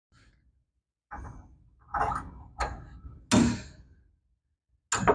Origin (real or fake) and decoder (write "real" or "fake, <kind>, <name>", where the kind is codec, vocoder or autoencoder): real